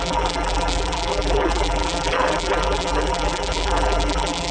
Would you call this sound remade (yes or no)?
yes